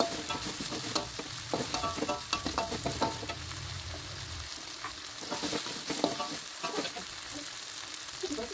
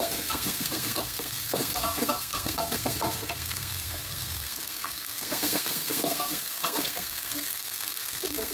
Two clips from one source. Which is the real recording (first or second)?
first